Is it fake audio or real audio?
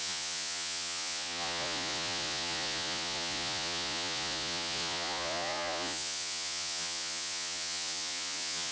fake